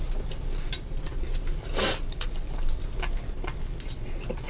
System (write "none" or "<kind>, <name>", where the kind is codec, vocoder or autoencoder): none